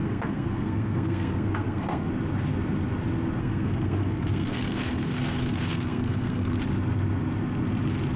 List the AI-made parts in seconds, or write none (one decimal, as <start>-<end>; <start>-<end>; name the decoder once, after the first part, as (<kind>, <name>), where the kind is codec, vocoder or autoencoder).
0.0-2.1 (codec, SNAC); 3.4-6.6